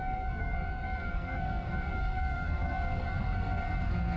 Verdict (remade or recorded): remade